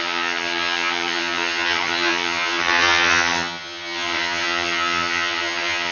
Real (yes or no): no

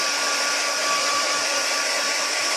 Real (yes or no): no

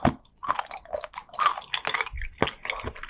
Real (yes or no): yes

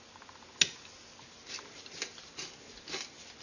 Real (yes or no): yes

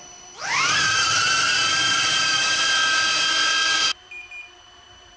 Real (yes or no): no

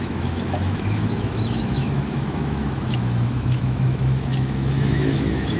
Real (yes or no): no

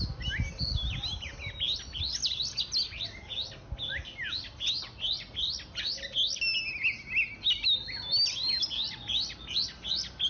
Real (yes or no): yes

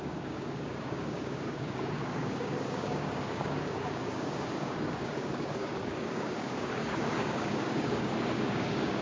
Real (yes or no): no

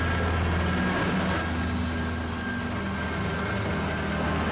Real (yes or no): yes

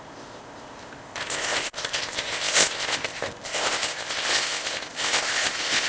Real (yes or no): no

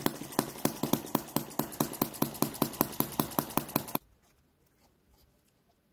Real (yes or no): yes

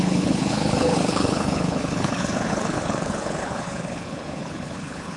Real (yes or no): no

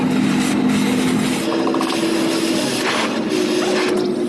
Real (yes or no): yes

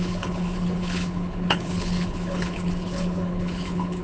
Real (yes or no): no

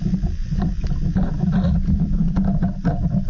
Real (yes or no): yes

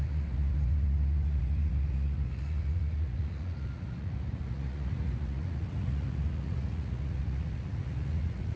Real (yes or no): no